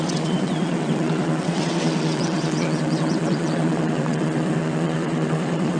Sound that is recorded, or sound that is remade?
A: remade